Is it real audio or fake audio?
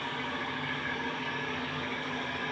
fake